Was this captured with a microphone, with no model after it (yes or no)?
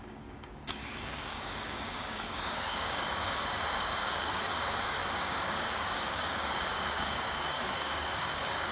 no